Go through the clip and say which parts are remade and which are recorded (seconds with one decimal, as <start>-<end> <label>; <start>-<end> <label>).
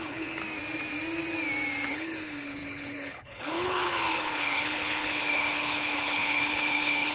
0.0-0.4 remade; 0.4-1.9 recorded; 1.9-7.1 remade